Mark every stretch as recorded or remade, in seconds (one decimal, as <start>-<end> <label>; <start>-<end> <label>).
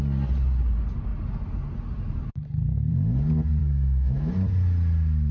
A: 0.0-3.6 recorded; 3.6-4.3 remade; 4.3-5.3 recorded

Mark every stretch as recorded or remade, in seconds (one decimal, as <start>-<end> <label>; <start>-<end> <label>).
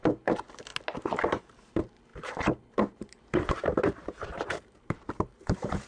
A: 0.0-0.7 remade; 0.7-1.7 recorded; 1.7-5.9 remade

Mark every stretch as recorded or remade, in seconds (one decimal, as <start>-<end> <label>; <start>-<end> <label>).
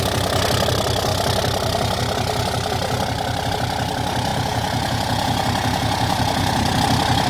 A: 0.0-4.3 recorded; 4.3-6.8 remade; 6.8-7.3 recorded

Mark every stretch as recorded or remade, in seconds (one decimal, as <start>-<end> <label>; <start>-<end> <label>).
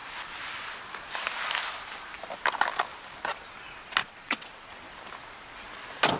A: 0.0-4.0 recorded; 4.0-4.7 remade; 4.7-6.2 recorded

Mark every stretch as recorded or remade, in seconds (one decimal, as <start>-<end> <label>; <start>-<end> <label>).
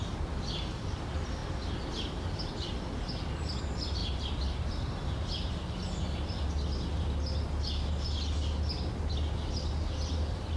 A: 0.0-10.6 recorded